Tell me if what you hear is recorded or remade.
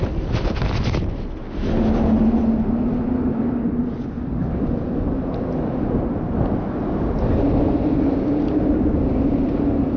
recorded